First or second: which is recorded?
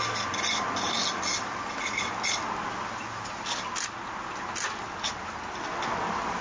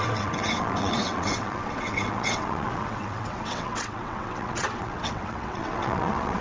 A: first